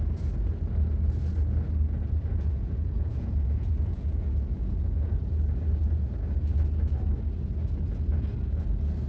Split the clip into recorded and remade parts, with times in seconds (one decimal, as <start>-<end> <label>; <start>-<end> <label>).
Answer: 0.0-2.3 recorded; 2.3-5.2 remade; 5.2-9.1 recorded